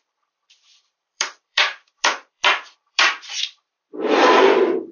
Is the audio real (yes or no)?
no